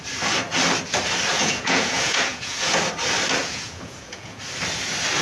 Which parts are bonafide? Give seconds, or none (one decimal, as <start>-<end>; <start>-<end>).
0.0-1.3; 2.8-3.4; 4.4-5.2